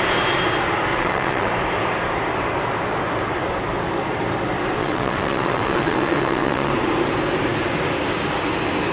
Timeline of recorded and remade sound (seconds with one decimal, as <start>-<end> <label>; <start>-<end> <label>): 0.0-0.9 recorded; 0.9-1.5 remade; 1.5-4.8 recorded; 4.8-6.7 remade; 6.7-8.9 recorded